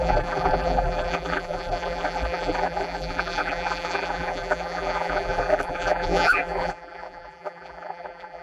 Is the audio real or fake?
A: fake